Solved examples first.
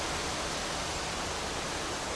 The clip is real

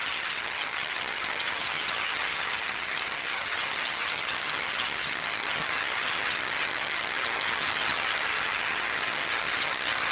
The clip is fake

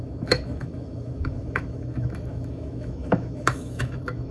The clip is fake